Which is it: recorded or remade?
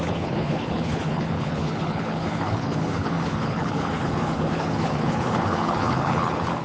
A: remade